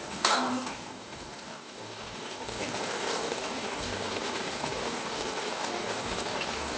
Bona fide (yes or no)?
no